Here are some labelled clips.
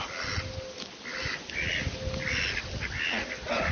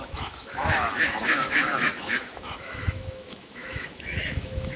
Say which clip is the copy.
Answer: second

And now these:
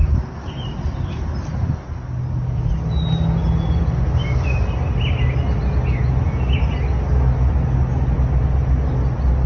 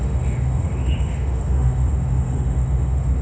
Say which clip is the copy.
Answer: second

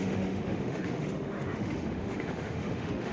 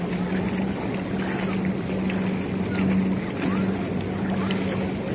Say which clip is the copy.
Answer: first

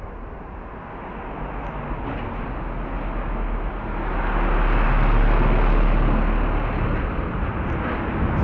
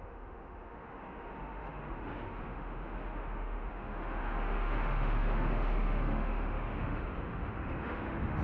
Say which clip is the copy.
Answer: second